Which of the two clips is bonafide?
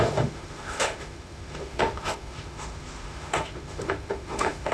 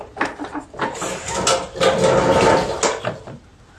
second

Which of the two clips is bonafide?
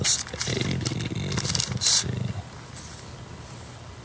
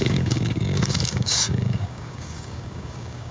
first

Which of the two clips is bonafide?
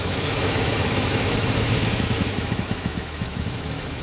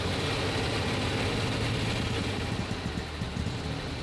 second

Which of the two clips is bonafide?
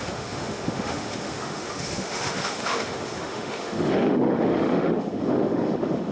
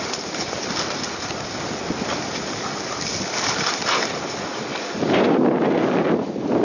second